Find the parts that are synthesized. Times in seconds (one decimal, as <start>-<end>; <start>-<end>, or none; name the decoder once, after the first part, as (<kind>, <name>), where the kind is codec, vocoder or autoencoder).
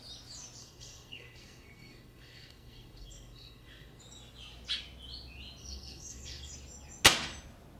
0.6-4.0 (codec, SNAC); 5.6-6.5